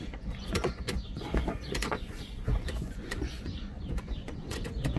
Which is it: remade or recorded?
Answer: remade